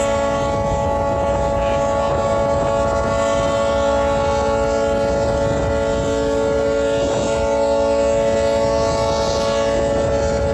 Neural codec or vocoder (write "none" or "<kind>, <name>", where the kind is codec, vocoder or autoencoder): none